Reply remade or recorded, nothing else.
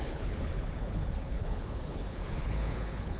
remade